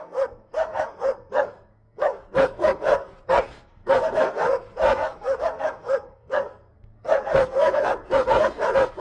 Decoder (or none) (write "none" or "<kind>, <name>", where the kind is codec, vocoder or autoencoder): codec, SNAC